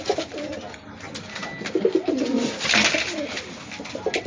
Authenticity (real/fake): real